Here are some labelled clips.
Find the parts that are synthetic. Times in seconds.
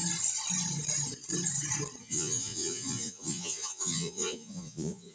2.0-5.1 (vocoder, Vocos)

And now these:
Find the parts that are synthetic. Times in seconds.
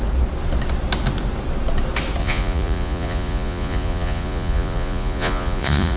2.2-6.0 (vocoder, Vocos)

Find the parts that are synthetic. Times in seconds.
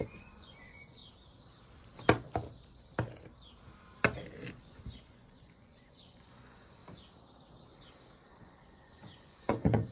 0.0-1.0 (vocoder, Vocos); 4.6-6.8; 8.3-9.9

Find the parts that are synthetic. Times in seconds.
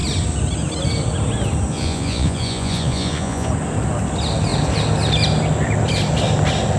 1.7-3.5 (vocoder, Vocos)